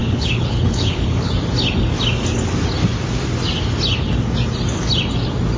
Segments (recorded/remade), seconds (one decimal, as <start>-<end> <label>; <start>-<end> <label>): 0.0-1.3 remade; 1.3-5.6 recorded